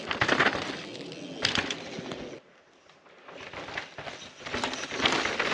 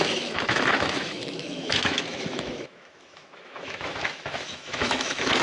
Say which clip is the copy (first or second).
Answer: second